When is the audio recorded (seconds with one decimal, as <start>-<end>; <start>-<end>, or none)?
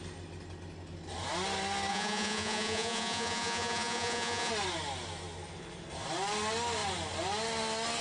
0.0-1.9; 4.5-8.0